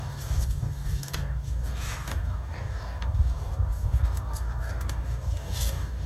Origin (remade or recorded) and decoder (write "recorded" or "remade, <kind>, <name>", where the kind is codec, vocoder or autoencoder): remade, codec, DAC